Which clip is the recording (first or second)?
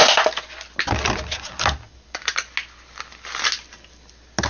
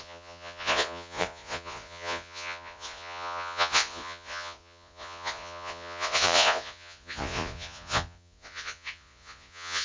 first